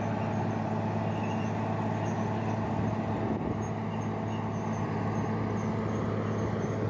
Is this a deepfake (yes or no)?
no